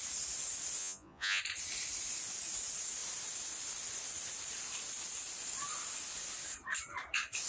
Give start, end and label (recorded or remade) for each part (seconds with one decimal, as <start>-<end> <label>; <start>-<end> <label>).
0.0-0.8 recorded; 0.8-1.4 remade; 1.4-7.5 recorded